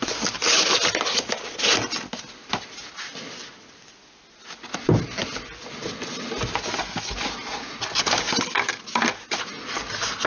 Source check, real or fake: real